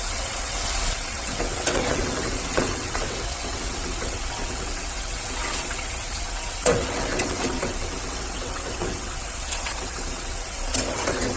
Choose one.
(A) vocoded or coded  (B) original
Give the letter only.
A